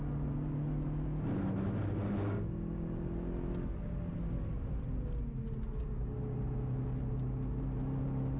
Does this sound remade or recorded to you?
recorded